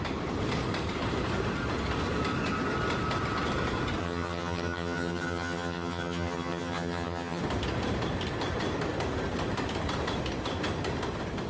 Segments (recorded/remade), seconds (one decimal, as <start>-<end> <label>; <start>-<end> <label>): 0.0-4.0 recorded; 4.0-7.4 remade; 7.4-11.5 recorded